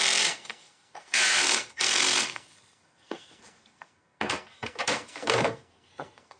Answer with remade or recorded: remade